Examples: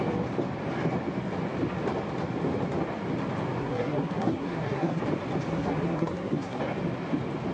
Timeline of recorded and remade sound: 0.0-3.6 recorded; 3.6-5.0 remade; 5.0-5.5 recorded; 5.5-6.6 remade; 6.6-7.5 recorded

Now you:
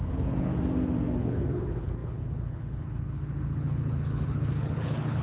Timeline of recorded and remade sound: 0.0-0.5 remade; 0.5-1.2 recorded; 1.2-5.2 remade